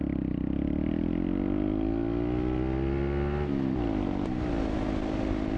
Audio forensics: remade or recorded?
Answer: recorded